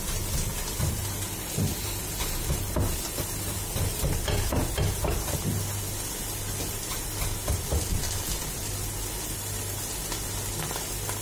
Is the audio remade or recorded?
recorded